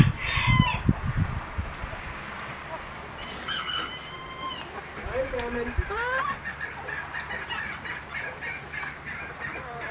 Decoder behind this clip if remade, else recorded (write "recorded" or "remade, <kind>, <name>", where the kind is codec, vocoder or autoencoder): recorded